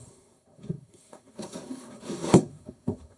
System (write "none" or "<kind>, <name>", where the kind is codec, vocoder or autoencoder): codec, SNAC